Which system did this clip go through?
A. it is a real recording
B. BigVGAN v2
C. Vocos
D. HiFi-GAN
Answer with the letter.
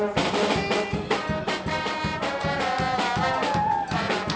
A